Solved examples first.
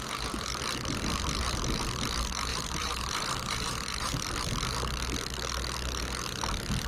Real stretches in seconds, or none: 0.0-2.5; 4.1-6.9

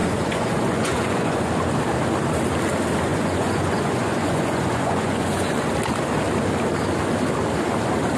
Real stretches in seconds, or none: 1.5-3.1; 5.7-8.2